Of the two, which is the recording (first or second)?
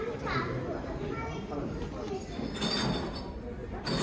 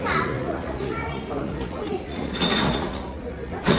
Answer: first